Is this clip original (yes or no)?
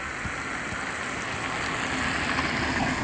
yes